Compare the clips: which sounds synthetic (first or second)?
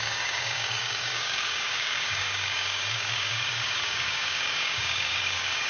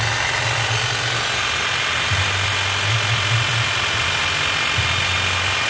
first